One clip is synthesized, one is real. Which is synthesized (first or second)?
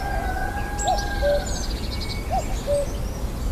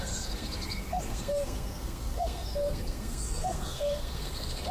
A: second